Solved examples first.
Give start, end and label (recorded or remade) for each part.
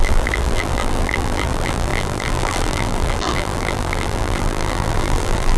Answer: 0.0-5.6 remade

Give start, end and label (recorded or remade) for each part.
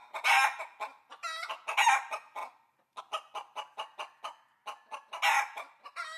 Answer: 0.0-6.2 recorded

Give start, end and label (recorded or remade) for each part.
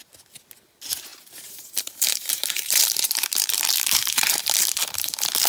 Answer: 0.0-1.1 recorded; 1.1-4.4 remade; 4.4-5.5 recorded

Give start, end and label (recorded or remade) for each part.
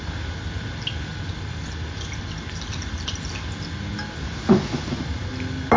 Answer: 0.0-1.1 recorded; 1.1-2.6 remade; 2.6-5.8 recorded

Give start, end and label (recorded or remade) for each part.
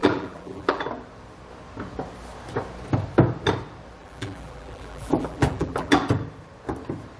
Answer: 0.0-0.9 remade; 0.9-4.0 recorded; 4.0-6.0 remade; 6.0-7.2 recorded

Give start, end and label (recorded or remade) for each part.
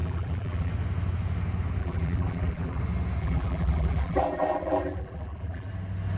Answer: 0.0-0.7 remade; 0.7-1.8 recorded; 1.8-2.8 remade; 2.8-3.2 recorded; 3.2-5.7 remade; 5.7-6.2 recorded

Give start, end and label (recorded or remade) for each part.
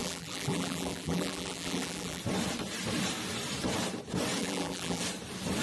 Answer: 0.0-2.2 remade; 2.2-4.4 recorded; 4.4-5.0 remade; 5.0-5.6 recorded